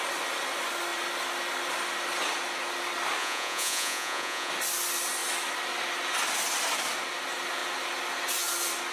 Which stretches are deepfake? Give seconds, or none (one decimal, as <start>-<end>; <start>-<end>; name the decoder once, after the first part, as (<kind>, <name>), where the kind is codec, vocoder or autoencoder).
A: 3.2-4.5 (vocoder, Vocos)